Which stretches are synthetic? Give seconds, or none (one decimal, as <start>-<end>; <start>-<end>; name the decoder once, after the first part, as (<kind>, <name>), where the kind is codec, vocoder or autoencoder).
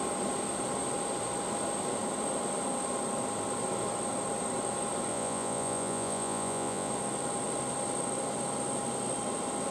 5.1-6.9 (vocoder, Vocos)